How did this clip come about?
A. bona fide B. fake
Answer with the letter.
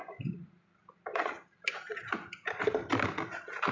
A